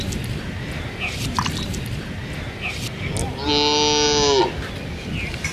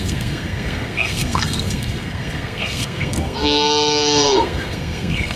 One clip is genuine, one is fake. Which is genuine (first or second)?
first